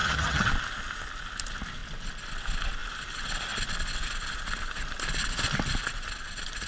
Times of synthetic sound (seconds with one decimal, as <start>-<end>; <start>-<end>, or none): 0.0-0.5